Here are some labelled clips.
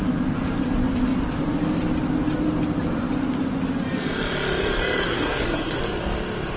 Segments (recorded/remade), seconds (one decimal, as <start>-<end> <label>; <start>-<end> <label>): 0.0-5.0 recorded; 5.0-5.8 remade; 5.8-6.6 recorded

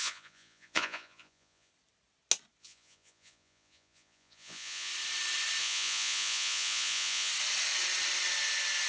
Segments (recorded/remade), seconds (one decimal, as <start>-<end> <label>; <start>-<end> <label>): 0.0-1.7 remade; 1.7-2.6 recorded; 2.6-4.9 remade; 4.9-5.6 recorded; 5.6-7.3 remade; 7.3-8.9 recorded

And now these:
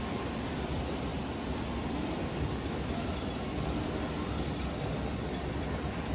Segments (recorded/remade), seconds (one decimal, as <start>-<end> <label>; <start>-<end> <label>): 0.0-1.1 remade; 1.1-1.8 recorded; 1.8-6.1 remade